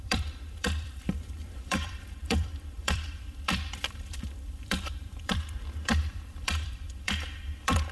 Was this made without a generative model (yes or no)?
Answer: no